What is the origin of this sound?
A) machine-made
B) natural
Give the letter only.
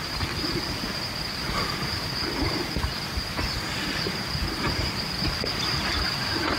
B